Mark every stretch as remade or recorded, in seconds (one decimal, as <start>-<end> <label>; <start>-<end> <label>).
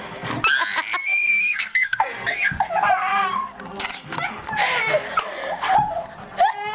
0.0-1.0 recorded; 1.0-2.5 remade; 2.5-6.7 recorded